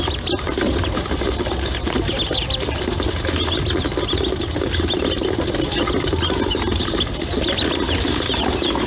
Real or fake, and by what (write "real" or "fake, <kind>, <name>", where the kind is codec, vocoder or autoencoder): real